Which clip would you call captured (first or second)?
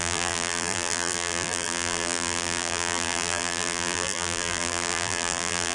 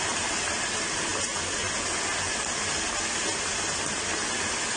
second